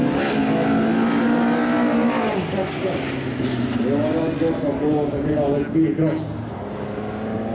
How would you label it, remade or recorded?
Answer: recorded